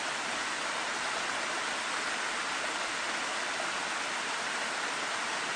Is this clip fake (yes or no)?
no